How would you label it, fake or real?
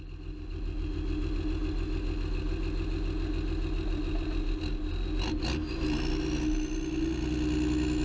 real